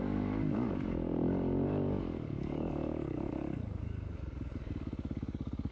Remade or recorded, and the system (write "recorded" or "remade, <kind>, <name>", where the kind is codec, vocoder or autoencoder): remade, codec, DAC